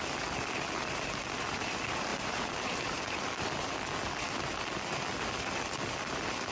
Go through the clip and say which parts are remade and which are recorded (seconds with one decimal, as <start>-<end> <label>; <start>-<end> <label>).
0.0-2.1 recorded; 2.1-3.0 remade; 3.0-6.5 recorded